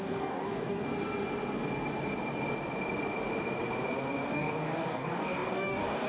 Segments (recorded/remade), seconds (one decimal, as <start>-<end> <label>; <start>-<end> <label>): 0.0-0.8 remade; 0.8-4.3 recorded; 4.3-6.1 remade